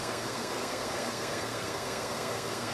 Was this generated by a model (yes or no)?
yes